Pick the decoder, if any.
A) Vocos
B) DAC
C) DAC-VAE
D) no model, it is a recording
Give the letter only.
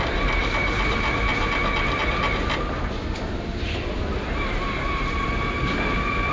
D